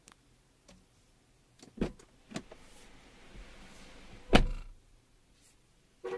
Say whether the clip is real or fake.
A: real